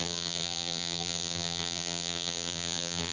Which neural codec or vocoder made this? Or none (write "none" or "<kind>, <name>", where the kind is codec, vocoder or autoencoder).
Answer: vocoder, BigVGAN v2